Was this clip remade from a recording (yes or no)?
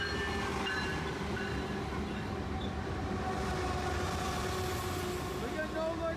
no